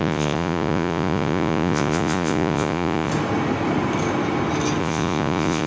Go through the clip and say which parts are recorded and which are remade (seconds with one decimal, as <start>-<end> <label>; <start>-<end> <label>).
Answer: 0.0-3.1 remade; 3.1-4.8 recorded; 4.8-5.7 remade